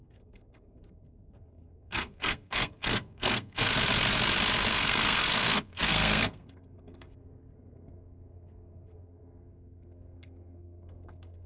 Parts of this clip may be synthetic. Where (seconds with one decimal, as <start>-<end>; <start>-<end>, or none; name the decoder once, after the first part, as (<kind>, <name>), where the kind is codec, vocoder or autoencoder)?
0.0-3.7 (codec, SNAC); 4.7-11.5

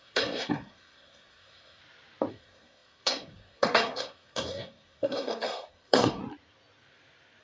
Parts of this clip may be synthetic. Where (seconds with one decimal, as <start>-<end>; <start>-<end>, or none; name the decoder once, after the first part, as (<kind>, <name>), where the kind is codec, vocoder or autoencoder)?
0.0-1.8 (codec, SNAC); 2.3-6.2